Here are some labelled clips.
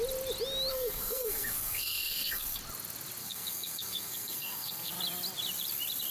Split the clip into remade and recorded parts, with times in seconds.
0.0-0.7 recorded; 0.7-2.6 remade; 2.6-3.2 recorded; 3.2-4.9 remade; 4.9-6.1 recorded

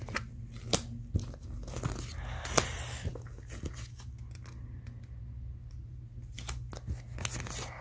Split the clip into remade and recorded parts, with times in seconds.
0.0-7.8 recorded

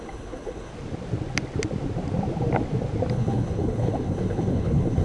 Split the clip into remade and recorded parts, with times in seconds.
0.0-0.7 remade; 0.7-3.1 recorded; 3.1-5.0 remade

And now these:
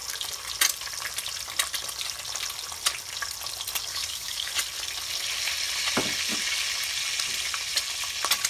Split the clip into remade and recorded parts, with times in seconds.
0.0-3.9 recorded; 3.9-4.5 remade; 4.5-8.5 recorded

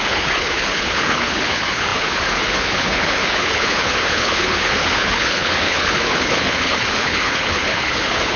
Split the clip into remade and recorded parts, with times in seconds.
0.0-8.4 remade

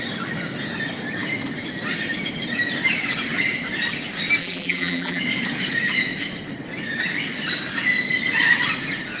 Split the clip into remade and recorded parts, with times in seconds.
0.0-4.4 recorded; 4.4-5.2 remade; 5.2-9.2 recorded

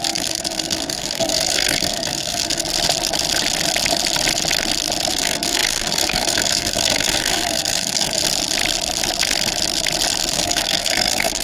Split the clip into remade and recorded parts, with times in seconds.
0.0-2.6 remade; 2.6-5.1 recorded; 5.1-8.2 remade; 8.2-10.3 recorded; 10.3-11.4 remade

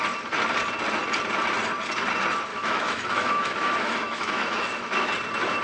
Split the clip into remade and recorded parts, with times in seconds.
0.0-2.5 recorded; 2.5-5.1 remade; 5.1-5.6 recorded